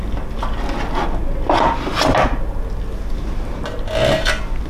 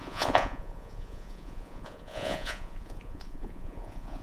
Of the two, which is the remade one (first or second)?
second